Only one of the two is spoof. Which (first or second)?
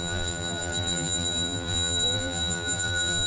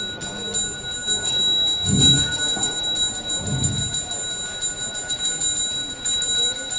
first